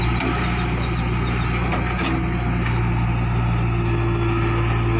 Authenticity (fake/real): real